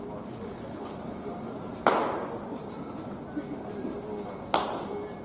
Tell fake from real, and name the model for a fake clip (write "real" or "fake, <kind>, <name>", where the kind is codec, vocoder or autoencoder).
real